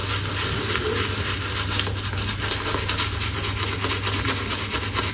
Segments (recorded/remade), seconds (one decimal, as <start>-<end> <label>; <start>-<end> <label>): 0.0-5.1 recorded